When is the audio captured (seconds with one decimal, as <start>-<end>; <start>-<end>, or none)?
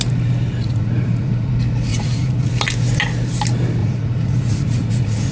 0.0-0.5; 1.5-1.9; 2.5-3.8